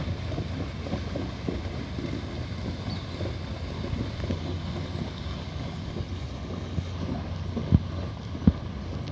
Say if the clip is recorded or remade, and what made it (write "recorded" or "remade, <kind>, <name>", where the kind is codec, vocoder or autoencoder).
recorded